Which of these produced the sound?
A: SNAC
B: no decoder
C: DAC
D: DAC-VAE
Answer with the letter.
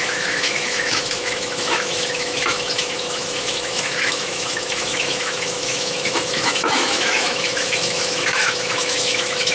D